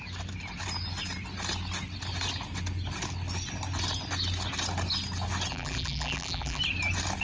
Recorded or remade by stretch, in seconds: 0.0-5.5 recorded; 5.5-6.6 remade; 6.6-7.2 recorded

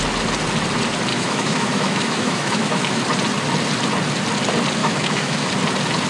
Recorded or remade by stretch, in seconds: 0.0-1.1 recorded; 1.1-3.0 remade; 3.0-4.8 recorded; 4.8-5.5 remade; 5.5-6.1 recorded

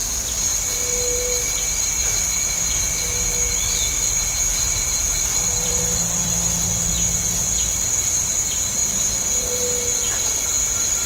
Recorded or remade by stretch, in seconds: 0.0-0.5 recorded; 0.5-1.8 remade; 1.8-4.5 recorded; 4.5-6.9 remade; 6.9-11.1 recorded

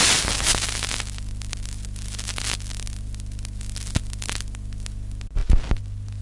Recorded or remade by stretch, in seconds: 0.0-6.2 recorded

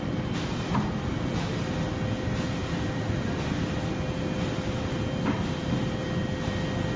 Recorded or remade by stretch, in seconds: 0.0-7.0 recorded

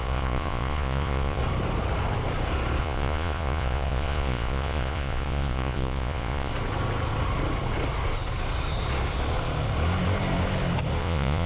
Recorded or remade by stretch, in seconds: 0.0-1.4 remade; 1.4-2.8 recorded; 2.8-6.5 remade; 6.5-11.0 recorded; 11.0-11.5 remade

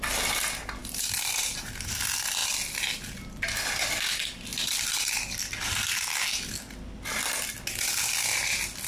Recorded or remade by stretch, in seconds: 0.0-0.8 recorded; 0.8-1.7 remade; 1.7-8.9 recorded

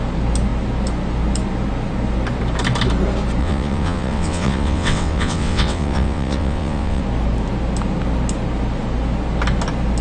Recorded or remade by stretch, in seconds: 0.0-3.4 recorded; 3.4-7.0 remade; 7.0-10.0 recorded